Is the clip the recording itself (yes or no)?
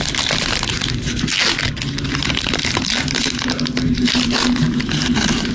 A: yes